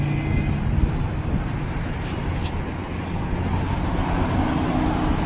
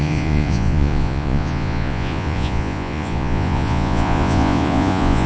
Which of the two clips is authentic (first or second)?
first